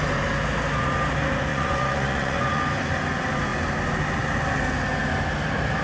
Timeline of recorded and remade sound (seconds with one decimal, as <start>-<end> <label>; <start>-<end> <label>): 0.0-1.5 recorded; 1.5-2.6 remade; 2.6-5.8 recorded